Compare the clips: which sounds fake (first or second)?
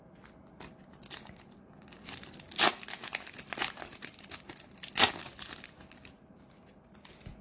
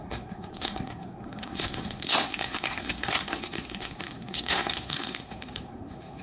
second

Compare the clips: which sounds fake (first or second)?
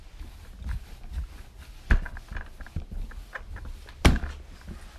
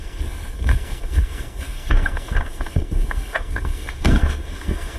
second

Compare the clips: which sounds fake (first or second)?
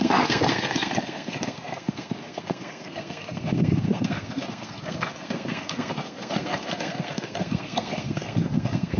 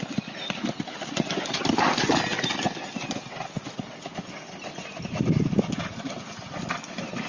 first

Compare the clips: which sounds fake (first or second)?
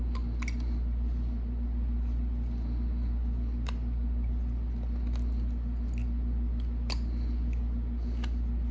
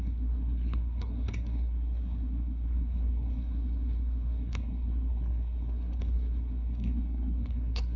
second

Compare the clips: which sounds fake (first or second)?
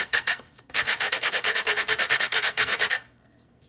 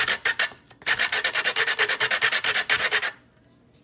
first